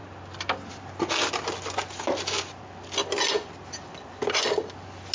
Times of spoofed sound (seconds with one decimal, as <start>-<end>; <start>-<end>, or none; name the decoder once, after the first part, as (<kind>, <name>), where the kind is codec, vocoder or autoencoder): none